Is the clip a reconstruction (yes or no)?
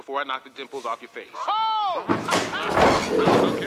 no